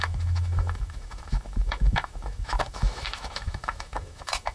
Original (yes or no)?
no